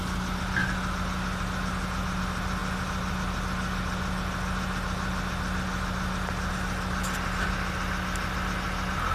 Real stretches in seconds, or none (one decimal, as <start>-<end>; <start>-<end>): 0.0-9.1